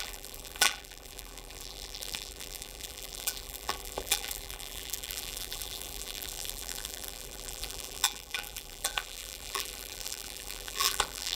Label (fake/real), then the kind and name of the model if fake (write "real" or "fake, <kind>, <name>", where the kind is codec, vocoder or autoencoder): fake, vocoder, BigVGAN v2